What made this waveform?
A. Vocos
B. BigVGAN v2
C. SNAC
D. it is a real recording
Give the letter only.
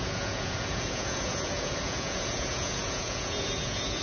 A